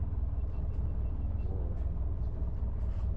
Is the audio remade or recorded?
recorded